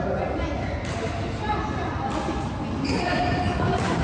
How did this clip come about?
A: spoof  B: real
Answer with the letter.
B